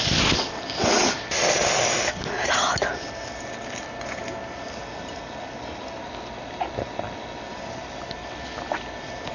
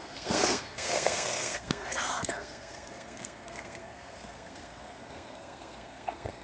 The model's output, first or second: second